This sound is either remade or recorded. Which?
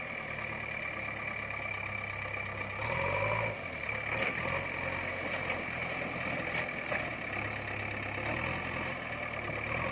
recorded